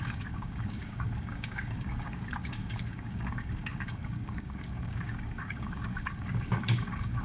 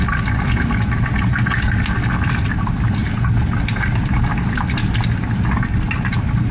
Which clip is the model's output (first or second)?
first